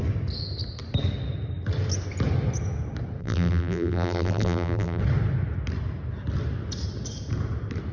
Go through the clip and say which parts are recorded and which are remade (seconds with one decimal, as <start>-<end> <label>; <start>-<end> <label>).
0.0-3.2 recorded; 3.2-5.0 remade; 5.0-7.9 recorded